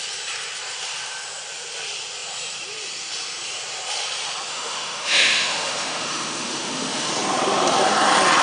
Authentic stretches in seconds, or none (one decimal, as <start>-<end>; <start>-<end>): 0.0-4.5; 7.1-8.4